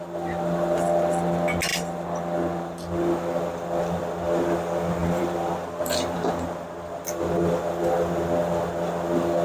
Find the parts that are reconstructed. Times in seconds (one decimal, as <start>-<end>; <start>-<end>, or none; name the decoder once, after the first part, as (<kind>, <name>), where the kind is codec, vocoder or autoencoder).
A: 5.0-6.3 (vocoder, BigVGAN v2)